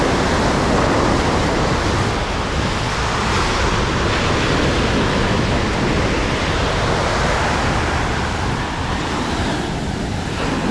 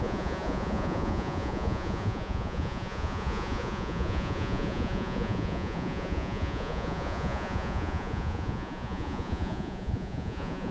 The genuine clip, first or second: first